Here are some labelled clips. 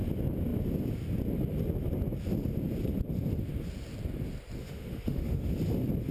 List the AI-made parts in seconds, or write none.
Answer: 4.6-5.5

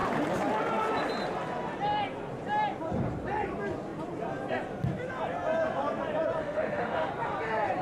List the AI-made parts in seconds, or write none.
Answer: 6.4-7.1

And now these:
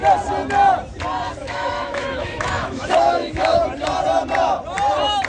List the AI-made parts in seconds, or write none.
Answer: 1.4-3.6

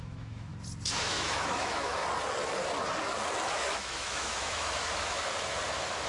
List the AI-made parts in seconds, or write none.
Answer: 0.0-0.5; 1.0-2.0; 3.5-5.2

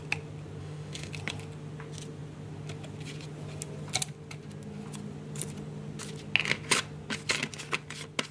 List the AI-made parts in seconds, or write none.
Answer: 0.6-1.1